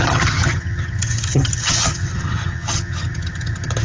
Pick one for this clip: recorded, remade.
remade